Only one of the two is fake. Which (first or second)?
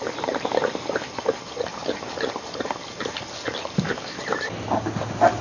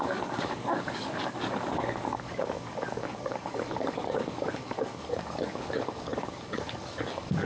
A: second